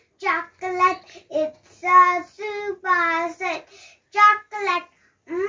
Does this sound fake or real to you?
real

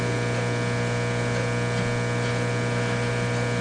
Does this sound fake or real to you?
real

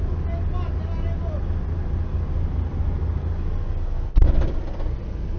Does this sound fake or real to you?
real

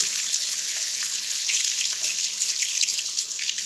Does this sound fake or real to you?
fake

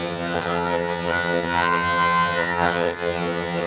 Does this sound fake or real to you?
fake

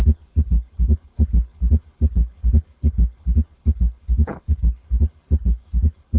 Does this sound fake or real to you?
fake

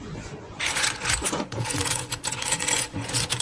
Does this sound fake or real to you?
fake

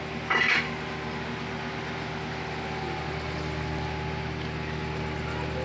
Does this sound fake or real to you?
real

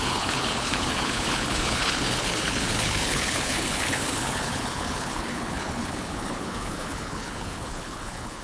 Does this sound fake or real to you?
fake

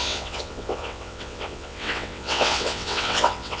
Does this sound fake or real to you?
fake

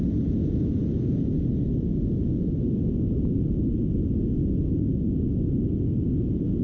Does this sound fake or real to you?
real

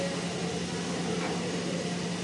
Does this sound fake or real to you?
real